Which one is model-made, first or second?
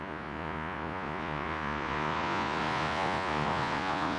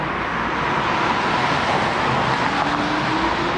first